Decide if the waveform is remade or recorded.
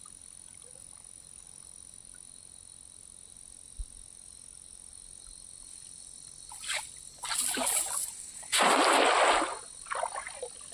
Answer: recorded